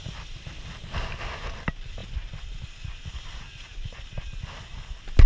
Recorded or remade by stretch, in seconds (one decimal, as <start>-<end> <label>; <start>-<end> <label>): 0.0-5.3 recorded